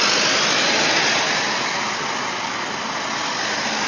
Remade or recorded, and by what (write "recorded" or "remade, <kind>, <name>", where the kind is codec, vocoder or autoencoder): recorded